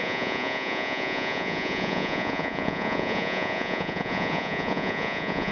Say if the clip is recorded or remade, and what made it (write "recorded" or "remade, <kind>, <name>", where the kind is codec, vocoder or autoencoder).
remade, vocoder, Vocos